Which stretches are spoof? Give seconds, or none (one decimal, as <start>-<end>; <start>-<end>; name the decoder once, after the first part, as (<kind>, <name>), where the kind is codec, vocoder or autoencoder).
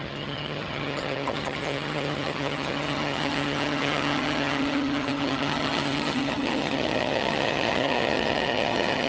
0.0-9.1 (vocoder, HiFi-GAN)